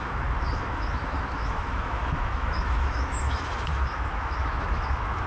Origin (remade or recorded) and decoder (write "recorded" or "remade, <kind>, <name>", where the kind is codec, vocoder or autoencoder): remade, autoencoder, DAC-VAE